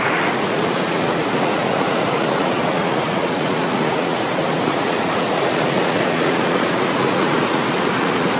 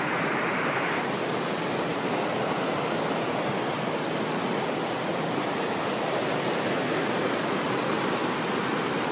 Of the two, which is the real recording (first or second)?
second